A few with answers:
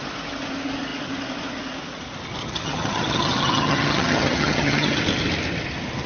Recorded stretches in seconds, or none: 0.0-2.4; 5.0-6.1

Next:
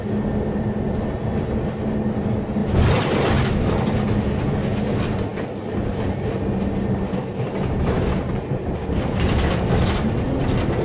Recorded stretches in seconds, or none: 0.0-10.8

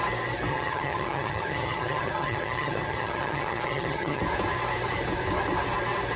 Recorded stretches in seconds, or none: 0.0-0.5; 4.2-6.2